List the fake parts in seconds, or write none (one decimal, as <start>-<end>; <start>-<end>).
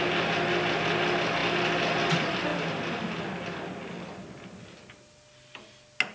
none